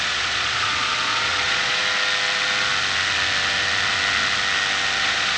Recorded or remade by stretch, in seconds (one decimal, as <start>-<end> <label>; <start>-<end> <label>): 0.0-1.8 remade; 1.8-5.0 recorded; 5.0-5.4 remade